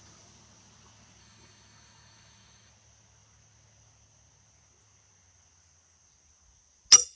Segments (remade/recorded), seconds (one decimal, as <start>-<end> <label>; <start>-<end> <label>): 0.0-1.2 recorded; 1.2-2.7 remade; 2.7-7.2 recorded